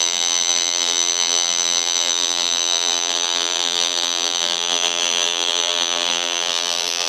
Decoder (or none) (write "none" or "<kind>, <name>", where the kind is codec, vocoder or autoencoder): vocoder, BigVGAN v2